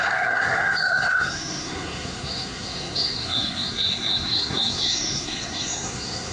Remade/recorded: remade